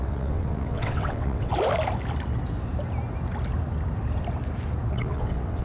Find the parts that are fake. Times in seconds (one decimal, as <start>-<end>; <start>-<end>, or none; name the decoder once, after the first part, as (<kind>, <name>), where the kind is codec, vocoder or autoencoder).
0.0-1.5 (vocoder, WaveNeXt); 4.9-5.6